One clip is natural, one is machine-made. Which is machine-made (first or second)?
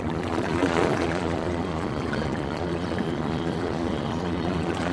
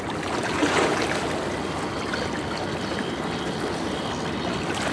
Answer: first